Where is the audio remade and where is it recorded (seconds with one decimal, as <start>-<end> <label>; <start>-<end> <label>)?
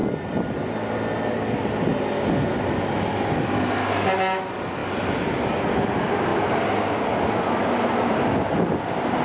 0.0-9.2 recorded